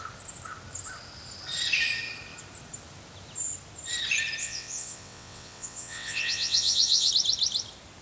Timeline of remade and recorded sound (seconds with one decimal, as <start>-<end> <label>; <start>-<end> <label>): 0.0-4.4 recorded; 4.4-7.1 remade; 7.1-8.0 recorded